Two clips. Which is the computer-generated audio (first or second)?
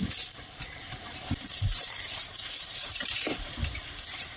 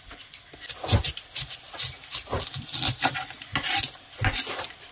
first